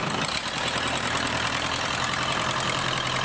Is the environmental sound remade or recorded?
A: remade